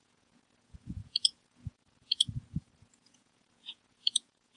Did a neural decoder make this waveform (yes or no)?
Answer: yes